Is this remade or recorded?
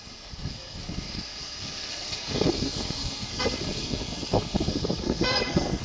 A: remade